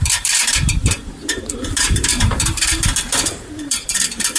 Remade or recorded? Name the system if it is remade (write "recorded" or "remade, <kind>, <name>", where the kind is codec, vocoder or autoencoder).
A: remade, vocoder, BigVGAN v2